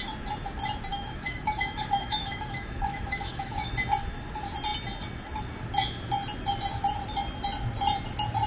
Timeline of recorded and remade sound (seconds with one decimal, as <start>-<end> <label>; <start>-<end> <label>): 0.0-0.9 recorded; 0.9-3.7 remade; 3.7-8.5 recorded